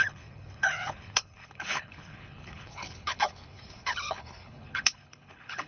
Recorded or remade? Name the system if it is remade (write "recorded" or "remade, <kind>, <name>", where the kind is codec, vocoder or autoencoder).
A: remade, codec, HILCodec